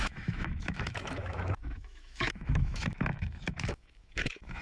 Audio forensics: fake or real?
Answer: fake